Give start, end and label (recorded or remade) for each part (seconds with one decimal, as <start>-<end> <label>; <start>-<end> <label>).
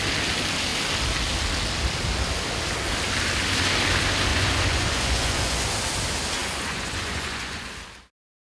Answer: 0.0-4.3 recorded; 4.3-5.6 remade; 5.6-6.4 recorded; 6.4-7.7 remade; 7.7-8.5 recorded